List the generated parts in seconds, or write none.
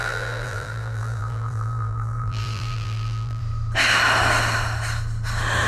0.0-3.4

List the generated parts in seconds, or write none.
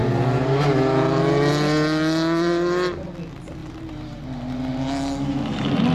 3.6-4.2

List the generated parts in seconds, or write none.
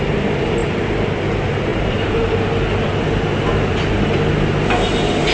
1.7-2.4; 3.4-4.3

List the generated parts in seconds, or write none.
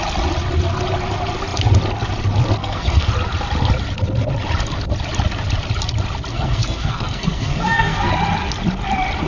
2.6-3.1; 6.3-8.1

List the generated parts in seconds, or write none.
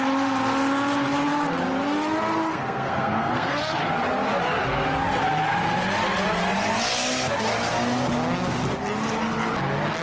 2.5-3.6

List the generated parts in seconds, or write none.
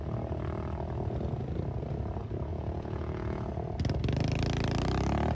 2.5-3.5